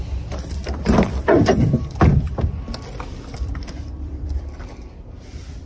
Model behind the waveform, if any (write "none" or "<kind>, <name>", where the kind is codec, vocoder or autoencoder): vocoder, BigVGAN v2